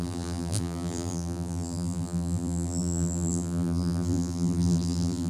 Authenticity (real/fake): fake